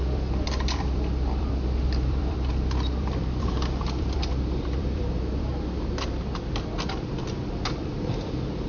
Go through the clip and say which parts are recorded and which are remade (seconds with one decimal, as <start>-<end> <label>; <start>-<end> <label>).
0.0-5.5 remade; 5.5-6.9 recorded; 6.9-8.7 remade